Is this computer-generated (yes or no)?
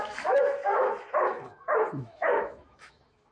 yes